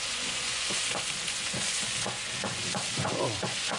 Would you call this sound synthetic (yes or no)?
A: yes